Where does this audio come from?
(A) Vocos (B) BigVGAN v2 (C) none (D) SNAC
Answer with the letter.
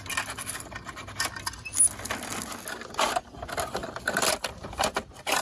C